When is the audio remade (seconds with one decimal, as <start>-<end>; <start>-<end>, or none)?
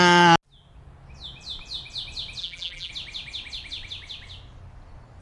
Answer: 2.4-2.9